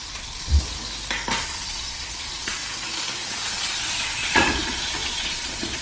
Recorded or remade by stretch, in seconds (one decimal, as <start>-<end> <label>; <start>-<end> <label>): 0.0-0.5 remade; 0.5-1.4 recorded; 1.4-2.6 remade; 2.6-3.3 recorded; 3.3-5.8 remade